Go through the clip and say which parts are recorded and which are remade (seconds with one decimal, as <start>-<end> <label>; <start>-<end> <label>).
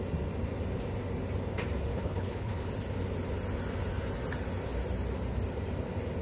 0.0-1.9 recorded; 1.9-2.7 remade; 2.7-6.2 recorded